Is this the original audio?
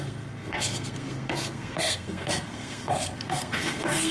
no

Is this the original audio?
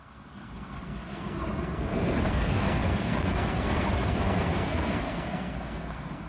no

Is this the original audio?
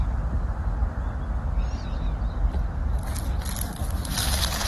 yes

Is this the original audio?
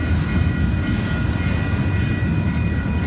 yes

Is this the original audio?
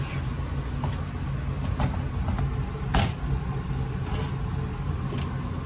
yes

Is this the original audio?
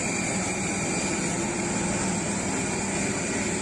yes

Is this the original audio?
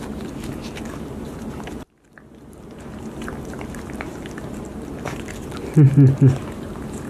yes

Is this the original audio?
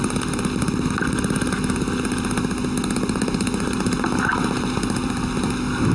yes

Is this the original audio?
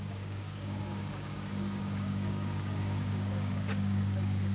no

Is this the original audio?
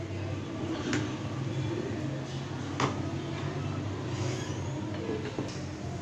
yes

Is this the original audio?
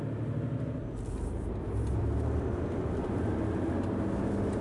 yes